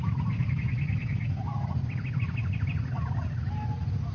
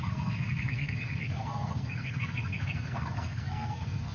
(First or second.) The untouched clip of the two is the first